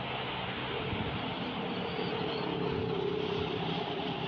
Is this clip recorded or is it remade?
recorded